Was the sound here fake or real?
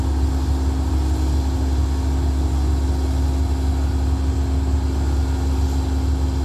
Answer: real